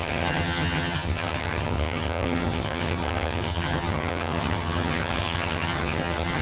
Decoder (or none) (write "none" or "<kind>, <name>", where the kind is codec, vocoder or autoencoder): vocoder, HiFi-GAN